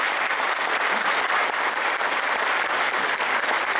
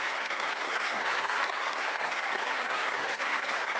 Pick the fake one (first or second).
second